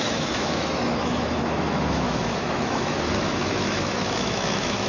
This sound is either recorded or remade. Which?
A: remade